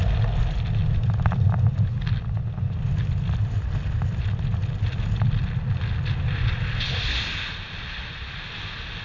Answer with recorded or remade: recorded